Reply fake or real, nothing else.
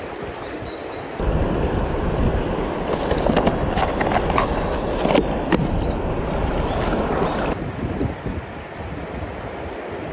real